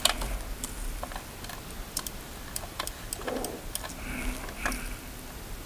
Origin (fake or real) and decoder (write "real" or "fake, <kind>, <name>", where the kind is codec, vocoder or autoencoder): real